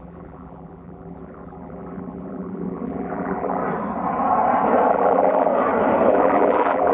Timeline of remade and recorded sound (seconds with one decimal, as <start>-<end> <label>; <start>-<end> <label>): 0.0-3.6 remade; 3.6-4.9 recorded; 4.9-5.5 remade; 5.5-6.1 recorded; 6.1-6.9 remade